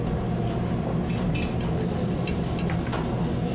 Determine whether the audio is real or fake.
real